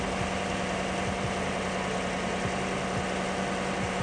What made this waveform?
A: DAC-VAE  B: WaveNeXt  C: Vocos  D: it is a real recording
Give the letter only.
D